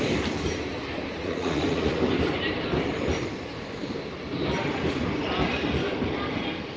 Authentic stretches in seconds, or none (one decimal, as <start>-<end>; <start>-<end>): 0.0-1.2; 2.0-6.8